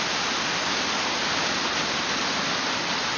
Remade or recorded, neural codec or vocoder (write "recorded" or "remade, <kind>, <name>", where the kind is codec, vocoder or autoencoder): recorded